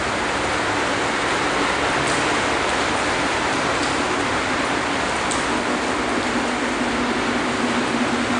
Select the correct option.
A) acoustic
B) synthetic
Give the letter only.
A